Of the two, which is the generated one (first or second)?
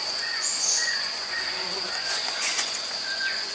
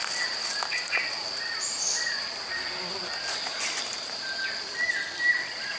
first